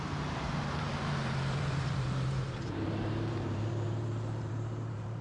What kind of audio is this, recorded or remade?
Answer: remade